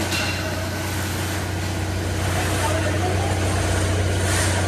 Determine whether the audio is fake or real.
real